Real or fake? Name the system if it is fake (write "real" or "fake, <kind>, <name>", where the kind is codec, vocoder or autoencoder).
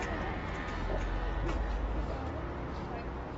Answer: real